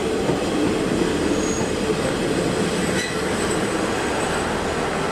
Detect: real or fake real